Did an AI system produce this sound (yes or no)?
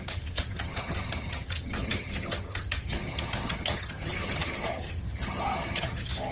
yes